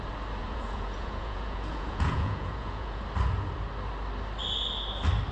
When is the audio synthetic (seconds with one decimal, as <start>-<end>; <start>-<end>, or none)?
0.4-3.0